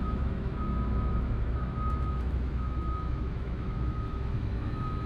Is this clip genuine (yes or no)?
no